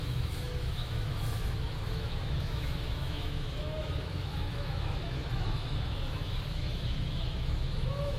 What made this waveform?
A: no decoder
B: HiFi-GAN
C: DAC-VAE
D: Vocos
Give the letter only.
C